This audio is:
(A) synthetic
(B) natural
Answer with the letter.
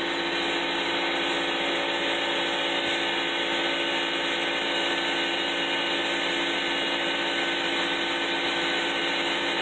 B